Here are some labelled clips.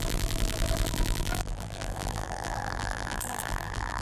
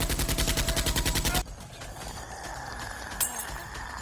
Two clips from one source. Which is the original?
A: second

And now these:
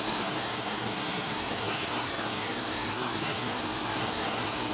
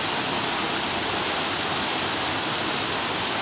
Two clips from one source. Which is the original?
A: second